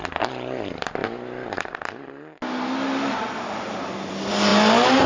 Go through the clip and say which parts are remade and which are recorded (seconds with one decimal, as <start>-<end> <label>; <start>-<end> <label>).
0.0-5.1 recorded